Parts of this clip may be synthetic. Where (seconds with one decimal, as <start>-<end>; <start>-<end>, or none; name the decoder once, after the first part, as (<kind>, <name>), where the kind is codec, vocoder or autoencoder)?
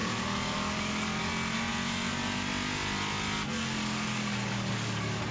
0.0-1.3 (codec, DAC); 3.5-5.3